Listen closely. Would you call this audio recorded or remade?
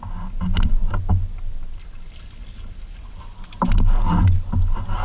recorded